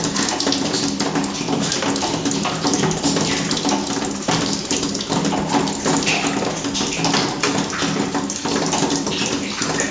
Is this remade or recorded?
recorded